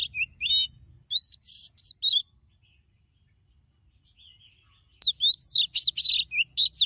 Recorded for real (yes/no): yes